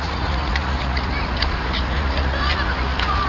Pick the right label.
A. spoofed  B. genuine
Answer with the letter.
A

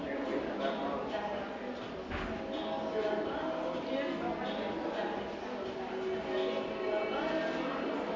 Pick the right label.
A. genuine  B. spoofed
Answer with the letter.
A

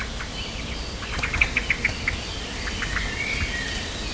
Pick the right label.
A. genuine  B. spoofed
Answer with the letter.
A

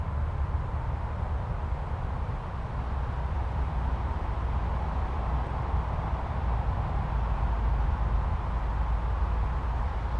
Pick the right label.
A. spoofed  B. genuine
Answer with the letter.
B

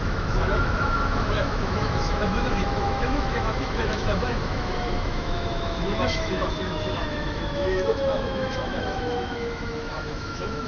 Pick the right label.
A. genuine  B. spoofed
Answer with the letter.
B